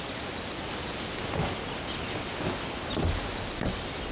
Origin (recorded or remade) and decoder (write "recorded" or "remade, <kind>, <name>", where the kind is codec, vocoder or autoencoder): recorded